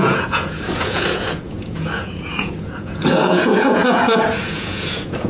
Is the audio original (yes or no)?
no